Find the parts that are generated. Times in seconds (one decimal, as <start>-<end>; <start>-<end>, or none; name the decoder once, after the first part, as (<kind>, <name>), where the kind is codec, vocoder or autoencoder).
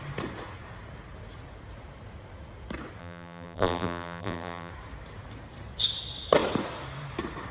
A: 3.0-4.7 (vocoder, BigVGAN v2)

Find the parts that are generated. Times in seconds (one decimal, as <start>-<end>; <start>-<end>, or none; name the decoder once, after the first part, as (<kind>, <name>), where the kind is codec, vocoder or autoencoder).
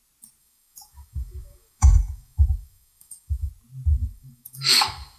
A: 0.4-3.5 (codec, DAC); 3.9-5.2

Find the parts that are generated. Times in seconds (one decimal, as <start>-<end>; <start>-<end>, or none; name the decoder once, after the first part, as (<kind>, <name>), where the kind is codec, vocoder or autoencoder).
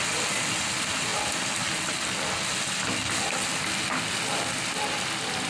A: none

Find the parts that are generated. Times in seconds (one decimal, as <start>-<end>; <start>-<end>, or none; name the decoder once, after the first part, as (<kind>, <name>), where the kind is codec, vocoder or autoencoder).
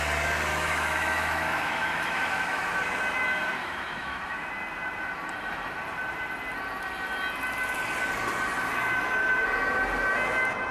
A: 0.5-2.7 (autoencoder, DAC-VAE); 3.6-4.5